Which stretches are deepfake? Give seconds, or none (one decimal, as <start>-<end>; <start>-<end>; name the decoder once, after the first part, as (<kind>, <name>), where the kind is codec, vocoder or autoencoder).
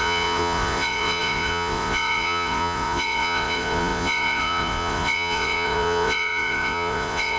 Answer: 0.0-7.4 (vocoder, Vocos)